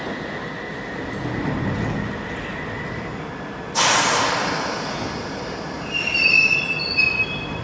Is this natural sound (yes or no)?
yes